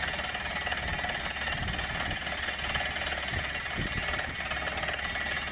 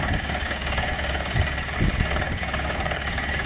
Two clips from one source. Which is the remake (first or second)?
second